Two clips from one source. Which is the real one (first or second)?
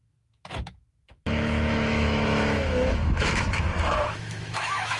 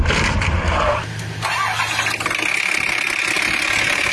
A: second